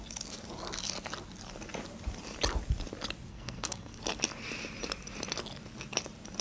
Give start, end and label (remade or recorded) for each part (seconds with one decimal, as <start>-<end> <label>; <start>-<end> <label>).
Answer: 0.0-3.3 recorded; 3.3-4.0 remade; 4.0-6.4 recorded